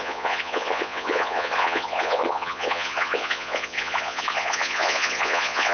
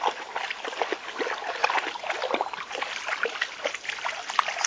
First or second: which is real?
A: second